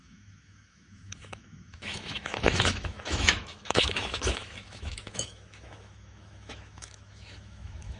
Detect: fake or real fake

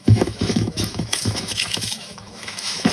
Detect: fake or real fake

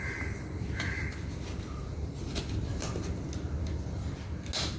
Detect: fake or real real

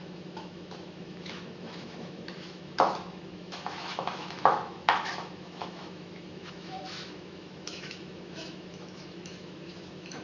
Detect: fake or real fake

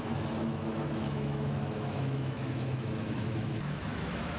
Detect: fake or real fake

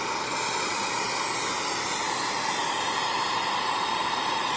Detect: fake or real real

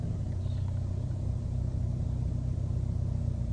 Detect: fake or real real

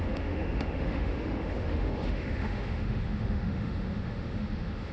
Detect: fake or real fake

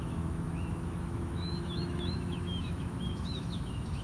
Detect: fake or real fake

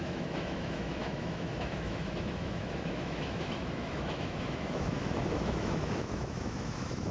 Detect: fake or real fake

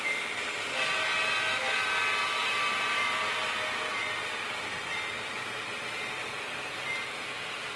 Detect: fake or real real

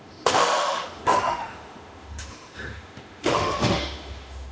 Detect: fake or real fake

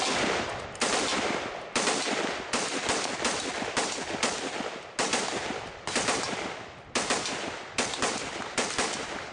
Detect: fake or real real